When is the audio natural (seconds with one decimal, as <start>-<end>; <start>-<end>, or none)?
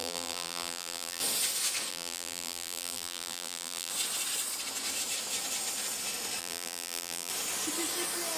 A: 1.2-1.9; 3.9-6.4; 7.3-8.4